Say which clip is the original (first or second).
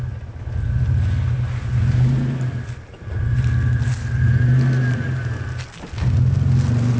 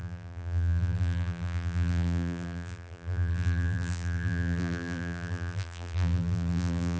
first